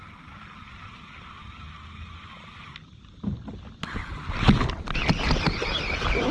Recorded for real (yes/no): yes